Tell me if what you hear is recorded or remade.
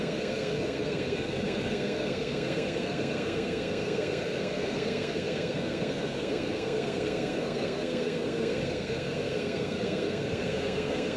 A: remade